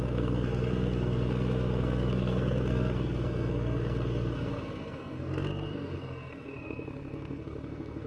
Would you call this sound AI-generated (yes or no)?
yes